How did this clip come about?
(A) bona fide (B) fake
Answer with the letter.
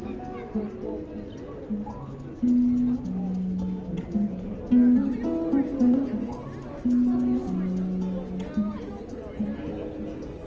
A